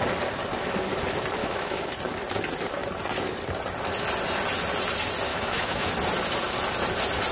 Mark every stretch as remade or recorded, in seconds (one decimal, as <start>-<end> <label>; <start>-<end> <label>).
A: 0.0-1.4 recorded; 1.4-1.9 remade; 1.9-5.3 recorded; 5.3-5.9 remade; 5.9-7.3 recorded